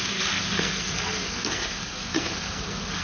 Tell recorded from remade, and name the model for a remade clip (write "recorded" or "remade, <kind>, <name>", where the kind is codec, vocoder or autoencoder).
remade, codec, SNAC